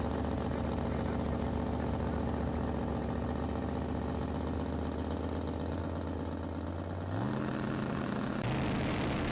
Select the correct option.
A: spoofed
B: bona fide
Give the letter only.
B